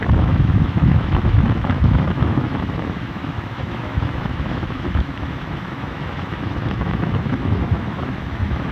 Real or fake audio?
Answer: fake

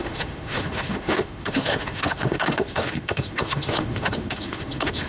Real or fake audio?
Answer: fake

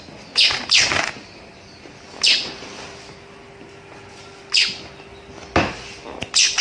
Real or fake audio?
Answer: real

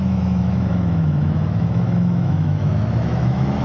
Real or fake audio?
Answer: fake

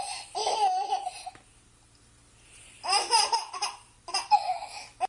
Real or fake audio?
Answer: real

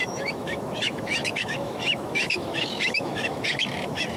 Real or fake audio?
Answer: fake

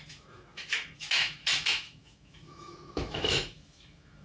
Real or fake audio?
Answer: fake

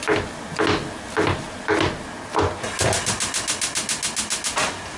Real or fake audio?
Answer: real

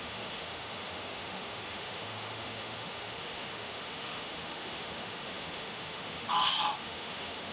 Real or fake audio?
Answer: fake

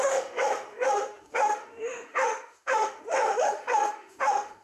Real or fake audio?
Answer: fake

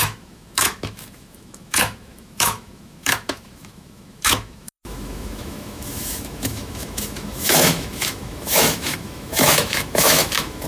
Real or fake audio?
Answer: fake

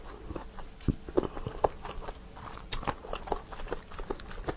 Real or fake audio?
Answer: real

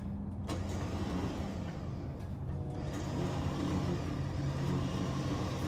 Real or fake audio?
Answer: real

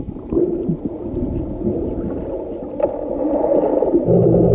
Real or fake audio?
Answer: real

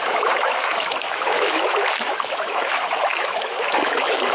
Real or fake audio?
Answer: fake